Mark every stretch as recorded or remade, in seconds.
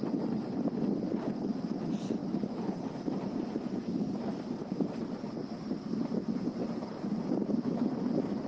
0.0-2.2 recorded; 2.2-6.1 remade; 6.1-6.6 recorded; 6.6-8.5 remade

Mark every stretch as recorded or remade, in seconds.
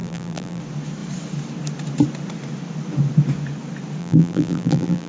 0.0-0.6 remade; 0.6-4.0 recorded; 4.0-5.1 remade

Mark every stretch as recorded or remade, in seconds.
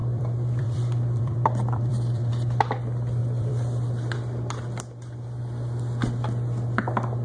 0.0-2.3 remade; 2.3-3.2 recorded; 3.2-5.4 remade; 5.4-7.2 recorded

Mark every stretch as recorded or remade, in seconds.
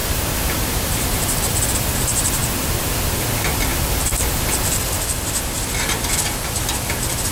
0.0-1.2 remade; 1.2-7.3 recorded